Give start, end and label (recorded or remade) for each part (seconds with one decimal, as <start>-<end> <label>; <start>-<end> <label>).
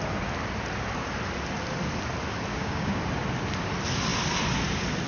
0.0-2.5 recorded; 2.5-3.0 remade; 3.0-5.1 recorded